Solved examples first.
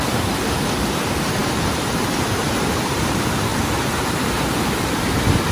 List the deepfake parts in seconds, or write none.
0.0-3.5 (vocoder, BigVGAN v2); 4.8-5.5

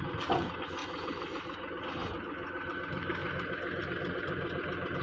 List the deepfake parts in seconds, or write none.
0.8-1.8 (vocoder, BigVGAN v2)

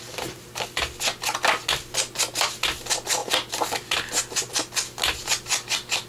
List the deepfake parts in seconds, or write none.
none

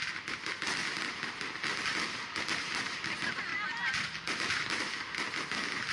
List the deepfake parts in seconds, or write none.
none